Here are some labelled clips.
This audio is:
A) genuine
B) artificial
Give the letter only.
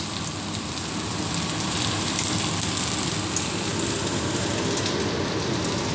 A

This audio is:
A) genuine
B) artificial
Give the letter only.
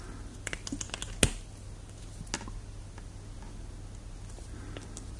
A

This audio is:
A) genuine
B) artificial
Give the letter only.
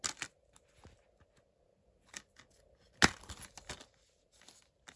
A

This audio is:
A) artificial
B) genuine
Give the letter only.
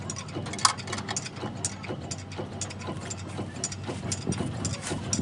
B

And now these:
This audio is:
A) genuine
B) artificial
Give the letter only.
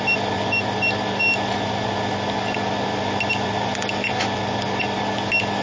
A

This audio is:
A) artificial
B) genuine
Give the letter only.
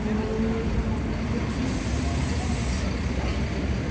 B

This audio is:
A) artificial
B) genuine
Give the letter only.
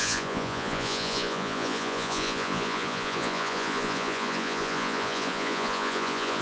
A